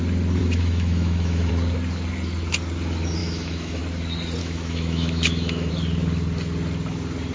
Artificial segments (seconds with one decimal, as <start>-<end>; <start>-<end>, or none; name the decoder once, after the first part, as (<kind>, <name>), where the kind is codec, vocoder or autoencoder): 0.4-1.5 (autoencoder, DAC-VAE); 3.2-3.8; 4.4-5.7